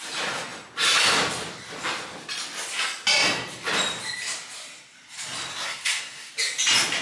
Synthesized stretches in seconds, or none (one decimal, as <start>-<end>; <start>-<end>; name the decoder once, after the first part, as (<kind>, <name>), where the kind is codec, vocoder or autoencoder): 5.5-6.3 (codec, SNAC)